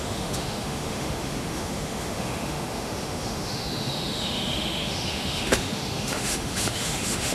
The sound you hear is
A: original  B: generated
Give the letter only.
B